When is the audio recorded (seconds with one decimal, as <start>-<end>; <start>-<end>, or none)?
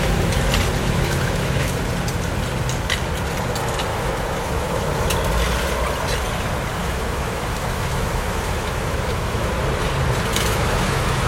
0.0-0.8; 1.9-3.9; 4.9-6.8; 9.5-10.3